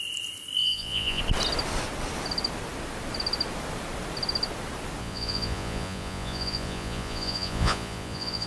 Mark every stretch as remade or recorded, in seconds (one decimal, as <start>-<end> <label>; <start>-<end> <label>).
0.0-0.6 recorded; 0.6-1.2 remade; 1.2-5.0 recorded; 5.0-8.5 remade